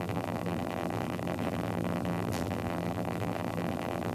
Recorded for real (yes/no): no